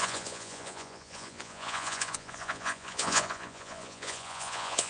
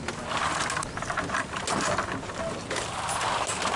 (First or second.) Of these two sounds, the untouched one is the second